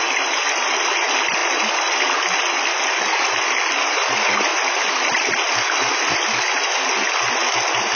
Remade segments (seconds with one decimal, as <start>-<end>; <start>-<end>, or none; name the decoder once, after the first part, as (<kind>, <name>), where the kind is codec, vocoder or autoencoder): none